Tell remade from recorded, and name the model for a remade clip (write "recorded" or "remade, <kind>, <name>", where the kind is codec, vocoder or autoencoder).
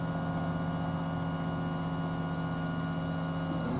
recorded